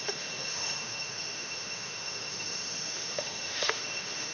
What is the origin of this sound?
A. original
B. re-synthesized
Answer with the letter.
B